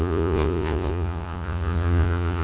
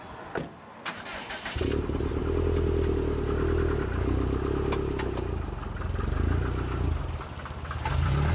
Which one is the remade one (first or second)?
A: first